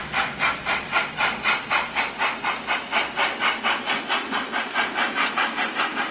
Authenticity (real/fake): real